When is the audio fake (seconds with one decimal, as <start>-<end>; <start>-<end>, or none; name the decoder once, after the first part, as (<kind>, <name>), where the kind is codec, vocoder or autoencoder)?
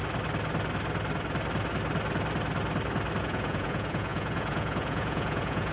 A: 3.2-5.7 (vocoder, Vocos)